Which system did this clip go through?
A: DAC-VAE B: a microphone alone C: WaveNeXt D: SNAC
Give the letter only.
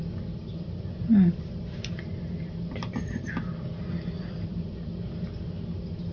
B